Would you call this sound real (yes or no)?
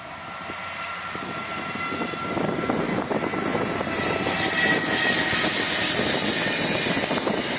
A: yes